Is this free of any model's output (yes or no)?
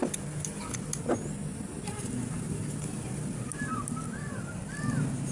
yes